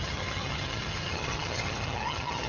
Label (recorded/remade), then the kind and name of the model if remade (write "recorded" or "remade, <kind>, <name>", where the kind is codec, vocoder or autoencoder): remade, vocoder, HiFi-GAN